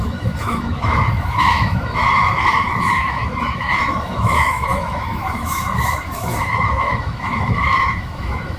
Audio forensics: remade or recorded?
remade